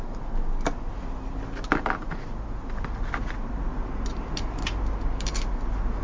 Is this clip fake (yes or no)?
no